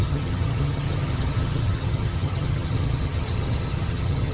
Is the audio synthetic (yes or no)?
yes